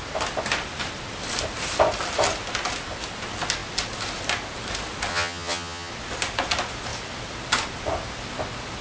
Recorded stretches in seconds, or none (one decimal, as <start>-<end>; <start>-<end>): 0.0-5.1; 5.9-8.8